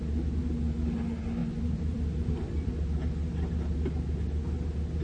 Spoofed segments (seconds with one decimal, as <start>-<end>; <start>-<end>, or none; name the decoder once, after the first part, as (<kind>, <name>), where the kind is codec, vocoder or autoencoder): 1.4-2.7 (vocoder, BigVGAN v2)